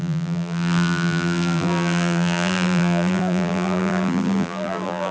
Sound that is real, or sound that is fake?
fake